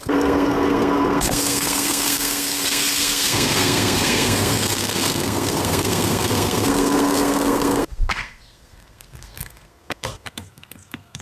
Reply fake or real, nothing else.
fake